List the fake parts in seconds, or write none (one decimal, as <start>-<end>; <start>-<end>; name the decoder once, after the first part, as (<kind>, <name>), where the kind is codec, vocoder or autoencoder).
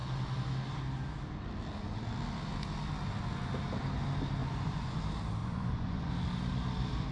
4.4-5.0 (vocoder, Vocos); 5.4-6.1